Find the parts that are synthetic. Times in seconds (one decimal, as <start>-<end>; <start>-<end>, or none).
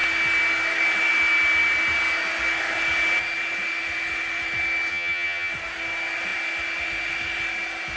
4.9-5.5